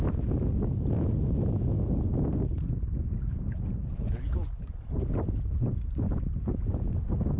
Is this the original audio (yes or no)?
yes